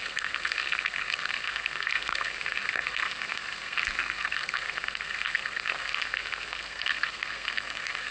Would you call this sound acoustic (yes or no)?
no